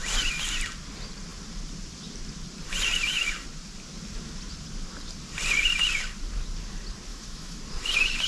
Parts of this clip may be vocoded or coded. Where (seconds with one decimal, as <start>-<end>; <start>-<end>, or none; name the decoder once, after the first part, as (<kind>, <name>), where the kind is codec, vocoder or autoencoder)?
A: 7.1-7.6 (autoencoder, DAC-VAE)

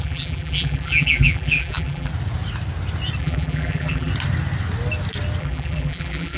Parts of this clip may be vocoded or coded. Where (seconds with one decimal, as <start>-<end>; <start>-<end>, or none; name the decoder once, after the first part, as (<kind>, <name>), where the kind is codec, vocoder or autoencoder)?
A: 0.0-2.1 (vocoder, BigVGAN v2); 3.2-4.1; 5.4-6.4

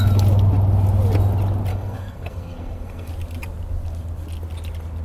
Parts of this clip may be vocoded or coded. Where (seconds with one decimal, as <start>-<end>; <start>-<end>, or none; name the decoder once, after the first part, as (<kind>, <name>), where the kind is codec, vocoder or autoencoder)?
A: 1.7-3.1 (codec, SNAC)

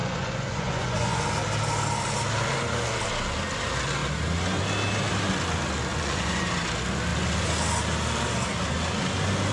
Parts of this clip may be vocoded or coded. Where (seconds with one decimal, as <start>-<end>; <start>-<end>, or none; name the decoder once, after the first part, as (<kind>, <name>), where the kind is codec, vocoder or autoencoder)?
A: 0.0-1.2 (vocoder, Vocos); 5.9-6.4

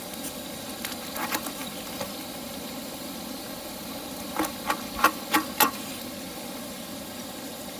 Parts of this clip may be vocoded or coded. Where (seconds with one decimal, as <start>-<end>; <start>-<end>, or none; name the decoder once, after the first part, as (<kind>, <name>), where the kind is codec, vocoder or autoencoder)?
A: none